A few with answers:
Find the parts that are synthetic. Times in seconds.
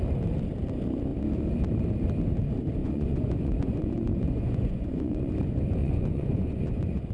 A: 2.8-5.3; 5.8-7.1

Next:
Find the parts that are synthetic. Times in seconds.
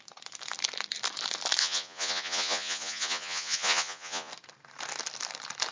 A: 1.6-4.3